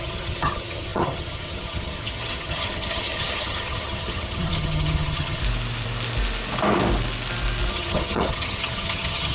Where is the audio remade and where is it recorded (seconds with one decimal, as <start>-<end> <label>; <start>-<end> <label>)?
0.0-5.4 remade; 5.4-7.7 recorded; 7.7-9.3 remade